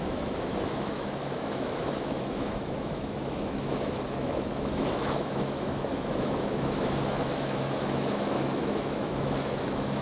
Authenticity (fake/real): fake